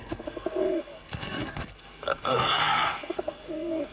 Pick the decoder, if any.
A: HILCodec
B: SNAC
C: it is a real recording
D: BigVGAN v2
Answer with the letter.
B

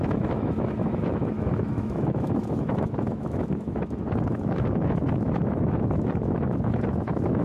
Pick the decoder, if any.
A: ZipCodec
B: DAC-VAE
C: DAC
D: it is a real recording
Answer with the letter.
B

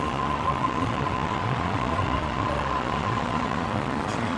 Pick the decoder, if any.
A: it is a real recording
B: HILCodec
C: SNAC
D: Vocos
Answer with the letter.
D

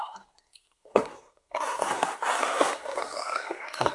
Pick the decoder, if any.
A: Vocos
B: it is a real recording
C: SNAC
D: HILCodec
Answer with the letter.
C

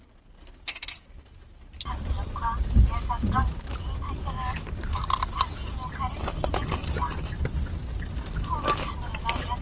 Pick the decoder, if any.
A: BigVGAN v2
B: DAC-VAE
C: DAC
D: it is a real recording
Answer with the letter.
D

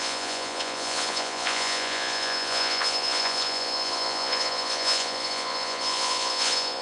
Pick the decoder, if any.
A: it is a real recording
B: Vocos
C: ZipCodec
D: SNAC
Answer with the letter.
B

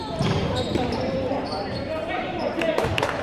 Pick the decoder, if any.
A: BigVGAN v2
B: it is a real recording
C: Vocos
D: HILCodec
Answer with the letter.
A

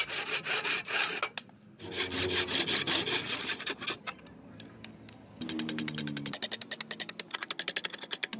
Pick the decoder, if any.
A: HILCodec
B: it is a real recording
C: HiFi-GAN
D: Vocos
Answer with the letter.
B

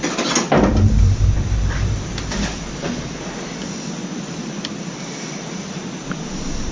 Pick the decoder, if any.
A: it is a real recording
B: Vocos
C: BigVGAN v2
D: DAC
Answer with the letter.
A